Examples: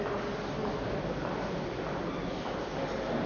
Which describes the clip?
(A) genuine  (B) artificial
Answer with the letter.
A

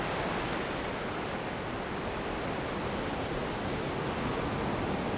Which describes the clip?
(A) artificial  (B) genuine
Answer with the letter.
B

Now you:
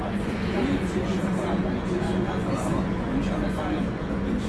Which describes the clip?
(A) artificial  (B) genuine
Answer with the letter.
A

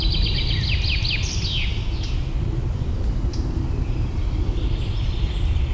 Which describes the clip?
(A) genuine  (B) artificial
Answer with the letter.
A